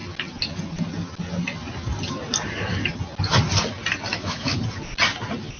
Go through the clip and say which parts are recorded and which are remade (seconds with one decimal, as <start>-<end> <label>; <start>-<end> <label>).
0.0-4.1 recorded; 4.1-4.6 remade; 4.6-5.6 recorded